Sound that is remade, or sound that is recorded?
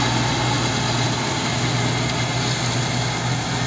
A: recorded